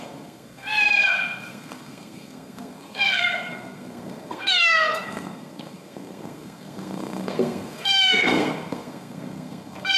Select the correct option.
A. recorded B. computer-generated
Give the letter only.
B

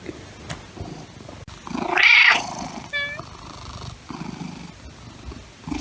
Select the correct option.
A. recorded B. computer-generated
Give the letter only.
A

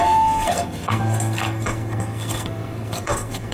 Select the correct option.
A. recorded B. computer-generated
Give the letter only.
B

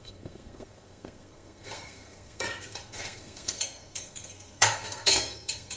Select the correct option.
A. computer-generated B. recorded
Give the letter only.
A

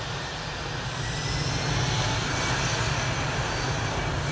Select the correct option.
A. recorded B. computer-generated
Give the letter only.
A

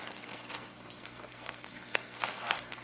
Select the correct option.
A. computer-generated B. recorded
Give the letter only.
A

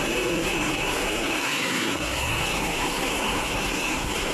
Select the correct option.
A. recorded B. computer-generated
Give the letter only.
B